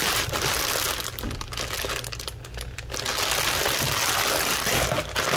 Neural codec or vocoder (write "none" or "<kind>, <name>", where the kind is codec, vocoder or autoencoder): none